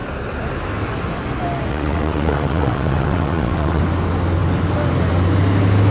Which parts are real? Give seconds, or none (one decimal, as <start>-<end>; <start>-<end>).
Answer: 0.0-1.7; 3.8-5.9